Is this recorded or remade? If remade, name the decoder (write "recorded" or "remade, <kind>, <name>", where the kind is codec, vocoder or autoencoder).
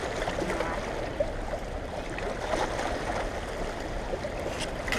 recorded